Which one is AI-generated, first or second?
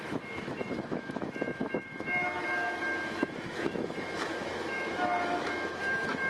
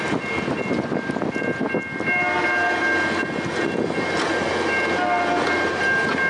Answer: first